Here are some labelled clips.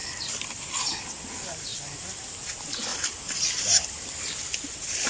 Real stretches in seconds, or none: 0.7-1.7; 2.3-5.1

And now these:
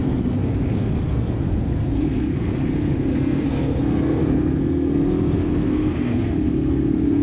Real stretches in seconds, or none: none

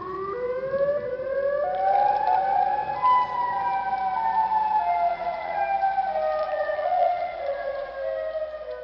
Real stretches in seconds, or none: 0.0-5.1; 5.6-6.4; 7.9-8.8

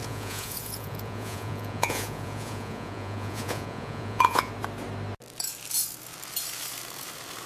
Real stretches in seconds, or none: 4.5-7.5

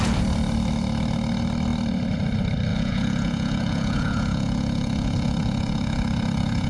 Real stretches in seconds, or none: 0.0-2.7

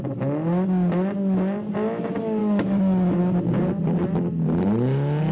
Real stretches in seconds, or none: 0.0-2.4; 3.2-5.3

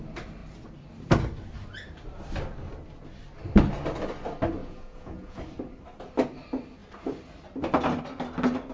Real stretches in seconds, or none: 0.0-4.6; 5.4-8.7